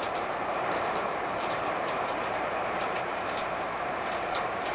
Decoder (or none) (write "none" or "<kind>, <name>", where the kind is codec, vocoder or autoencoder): vocoder, BigVGAN v2